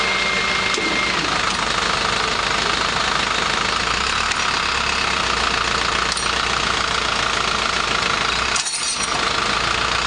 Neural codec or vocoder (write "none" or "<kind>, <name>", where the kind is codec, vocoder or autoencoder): none